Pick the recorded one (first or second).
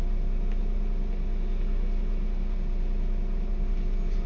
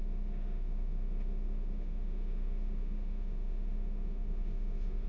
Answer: first